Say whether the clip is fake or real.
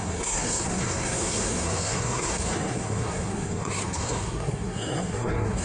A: fake